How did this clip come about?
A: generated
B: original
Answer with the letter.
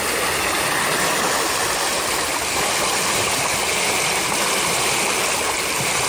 B